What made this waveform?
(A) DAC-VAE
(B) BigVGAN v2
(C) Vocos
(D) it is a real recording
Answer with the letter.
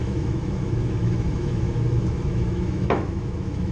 A